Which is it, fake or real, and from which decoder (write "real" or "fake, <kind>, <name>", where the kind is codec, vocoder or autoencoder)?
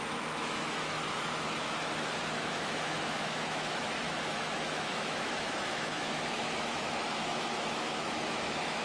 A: fake, autoencoder, DAC-VAE